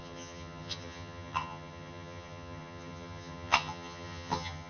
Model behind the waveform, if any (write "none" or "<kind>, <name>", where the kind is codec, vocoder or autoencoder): vocoder, HiFi-GAN